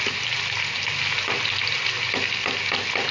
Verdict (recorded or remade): recorded